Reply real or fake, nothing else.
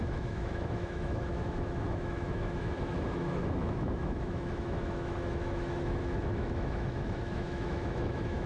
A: fake